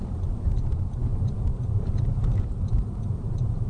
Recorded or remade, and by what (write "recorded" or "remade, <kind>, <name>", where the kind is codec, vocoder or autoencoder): remade, vocoder, BigVGAN v2